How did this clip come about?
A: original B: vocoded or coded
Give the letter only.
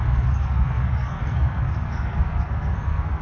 B